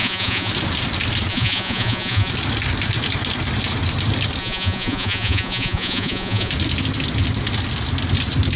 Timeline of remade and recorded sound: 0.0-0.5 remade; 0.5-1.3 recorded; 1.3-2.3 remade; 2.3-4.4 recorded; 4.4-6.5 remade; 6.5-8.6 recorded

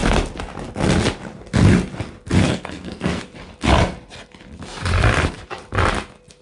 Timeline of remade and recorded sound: 0.0-2.4 recorded; 2.4-3.2 remade; 3.2-6.4 recorded

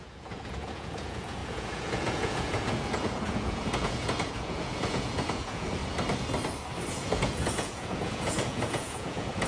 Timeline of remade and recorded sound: 0.0-5.8 remade; 5.8-6.9 recorded; 6.9-9.5 remade

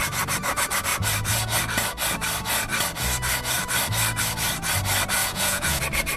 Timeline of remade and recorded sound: 0.0-5.2 recorded; 5.2-5.8 remade; 5.8-6.2 recorded

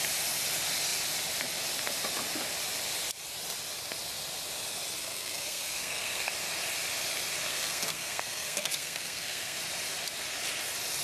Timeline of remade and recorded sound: 0.0-5.0 recorded; 5.0-6.3 remade; 6.3-7.5 recorded; 7.5-9.6 remade; 9.6-11.0 recorded

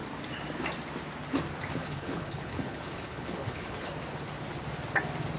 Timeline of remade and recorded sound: 0.0-1.8 recorded; 1.8-3.9 remade; 3.9-5.4 recorded